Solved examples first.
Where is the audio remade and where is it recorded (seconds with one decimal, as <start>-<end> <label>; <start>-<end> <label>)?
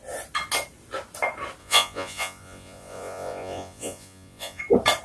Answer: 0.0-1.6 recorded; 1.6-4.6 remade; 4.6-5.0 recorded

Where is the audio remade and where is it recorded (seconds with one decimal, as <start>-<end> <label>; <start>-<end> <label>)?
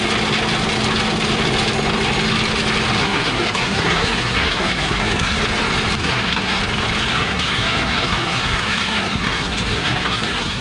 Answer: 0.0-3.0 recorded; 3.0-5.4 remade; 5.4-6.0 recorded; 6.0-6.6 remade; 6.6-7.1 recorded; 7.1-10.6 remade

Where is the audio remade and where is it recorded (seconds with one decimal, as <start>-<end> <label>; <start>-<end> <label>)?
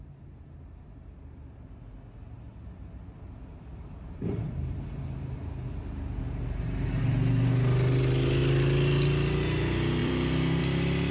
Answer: 0.0-3.7 recorded; 3.7-4.9 remade; 4.9-10.0 recorded; 10.0-10.6 remade; 10.6-11.1 recorded